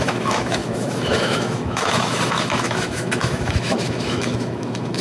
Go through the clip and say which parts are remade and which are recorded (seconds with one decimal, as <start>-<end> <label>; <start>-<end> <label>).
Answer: 0.0-5.0 remade